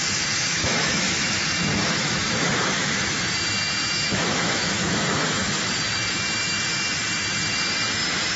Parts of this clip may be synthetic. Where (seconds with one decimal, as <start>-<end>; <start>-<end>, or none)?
0.0-1.1; 2.0-2.9; 4.1-5.7